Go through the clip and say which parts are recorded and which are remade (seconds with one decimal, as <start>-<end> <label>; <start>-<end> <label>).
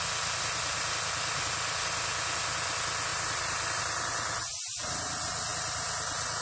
0.0-3.1 recorded; 3.1-3.8 remade; 3.8-6.4 recorded